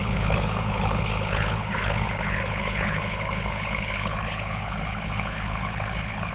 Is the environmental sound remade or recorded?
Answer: remade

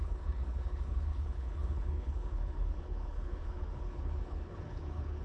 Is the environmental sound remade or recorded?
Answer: remade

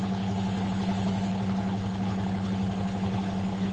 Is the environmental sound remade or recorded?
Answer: remade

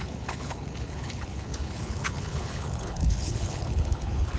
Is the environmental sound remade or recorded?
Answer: remade